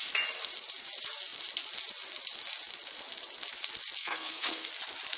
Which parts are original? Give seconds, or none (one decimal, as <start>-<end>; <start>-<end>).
0.0-4.0; 4.7-5.2